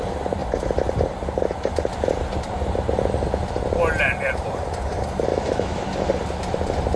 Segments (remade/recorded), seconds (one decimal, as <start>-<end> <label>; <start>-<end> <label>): 0.0-5.3 recorded; 5.3-5.8 remade; 5.8-7.0 recorded